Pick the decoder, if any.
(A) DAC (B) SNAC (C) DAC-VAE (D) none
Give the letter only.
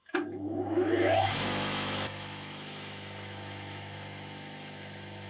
C